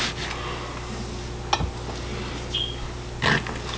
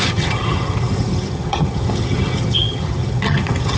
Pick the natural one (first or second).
first